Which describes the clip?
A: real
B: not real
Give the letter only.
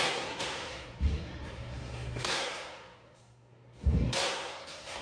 B